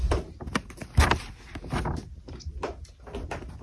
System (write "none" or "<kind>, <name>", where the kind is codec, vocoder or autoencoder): none